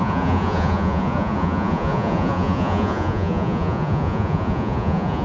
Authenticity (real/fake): fake